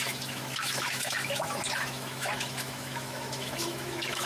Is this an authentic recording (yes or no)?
no